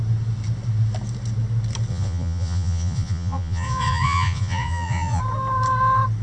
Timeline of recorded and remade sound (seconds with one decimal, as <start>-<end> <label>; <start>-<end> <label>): 0.0-1.9 recorded; 1.9-5.2 remade; 5.2-6.2 recorded